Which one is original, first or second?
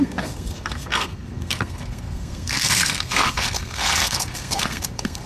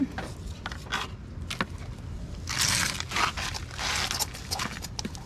second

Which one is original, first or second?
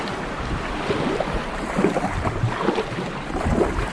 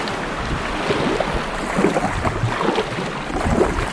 second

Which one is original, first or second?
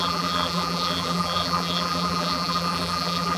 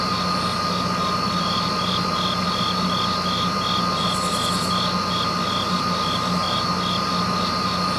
second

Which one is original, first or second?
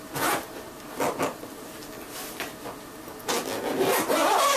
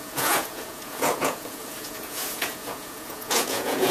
first